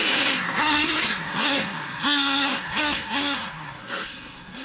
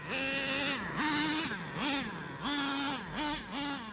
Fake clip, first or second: first